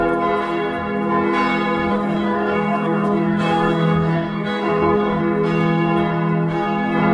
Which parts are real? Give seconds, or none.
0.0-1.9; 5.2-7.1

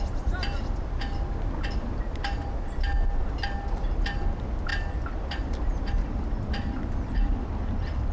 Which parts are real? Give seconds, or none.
0.0-8.1